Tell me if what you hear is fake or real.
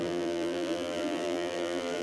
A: fake